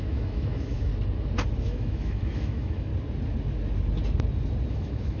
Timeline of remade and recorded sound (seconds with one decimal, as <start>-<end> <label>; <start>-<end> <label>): 0.0-0.9 remade; 0.9-1.6 recorded; 1.6-2.9 remade; 2.9-4.7 recorded; 4.7-5.2 remade